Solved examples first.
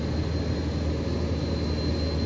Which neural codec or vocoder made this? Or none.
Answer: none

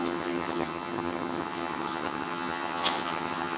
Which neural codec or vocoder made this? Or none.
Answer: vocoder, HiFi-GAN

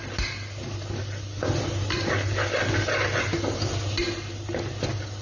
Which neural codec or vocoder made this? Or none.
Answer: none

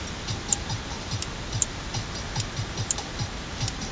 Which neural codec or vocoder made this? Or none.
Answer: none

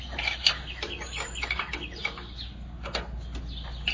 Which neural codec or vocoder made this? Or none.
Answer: none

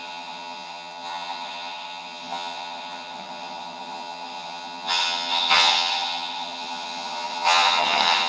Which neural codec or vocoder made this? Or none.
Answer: vocoder, HiFi-GAN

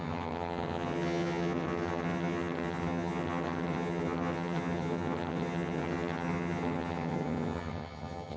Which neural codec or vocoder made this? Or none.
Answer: vocoder, HiFi-GAN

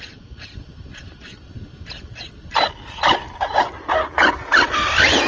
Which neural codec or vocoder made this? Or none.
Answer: none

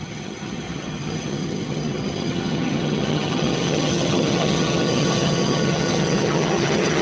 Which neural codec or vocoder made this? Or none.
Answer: vocoder, HiFi-GAN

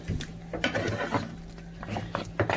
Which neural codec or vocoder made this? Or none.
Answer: none